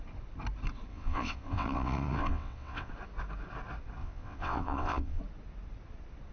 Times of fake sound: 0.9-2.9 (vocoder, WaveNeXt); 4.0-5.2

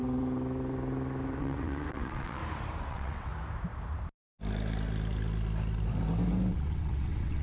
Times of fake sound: 1.4-2.4 (vocoder, WaveNeXt); 2.9-3.3; 6.5-7.4

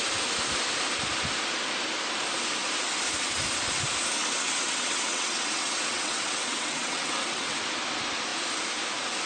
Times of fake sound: 4.2-7.6 (vocoder, WaveNeXt)

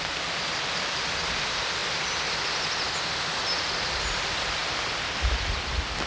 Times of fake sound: none

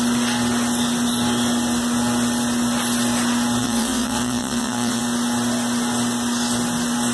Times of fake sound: 3.6-5.0 (vocoder, WaveNeXt)

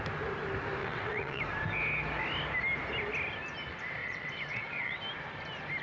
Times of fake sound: 0.8-1.4 (vocoder, WaveNeXt); 4.0-5.0